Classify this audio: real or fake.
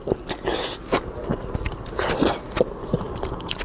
real